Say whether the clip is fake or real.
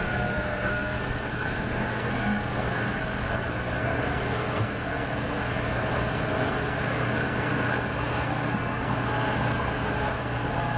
fake